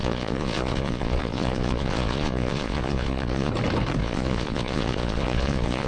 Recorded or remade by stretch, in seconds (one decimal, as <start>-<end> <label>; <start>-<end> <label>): 0.0-3.5 remade; 3.5-4.0 recorded; 4.0-5.9 remade